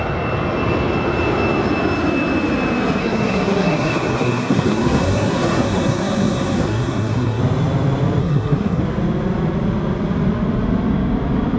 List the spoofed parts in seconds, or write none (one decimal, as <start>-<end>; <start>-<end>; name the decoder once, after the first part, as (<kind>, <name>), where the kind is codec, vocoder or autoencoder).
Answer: 3.0-7.4 (codec, SNAC); 8.2-8.8